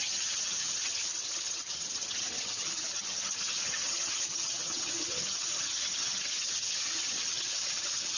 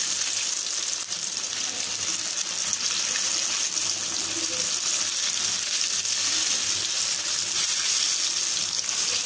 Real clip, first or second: second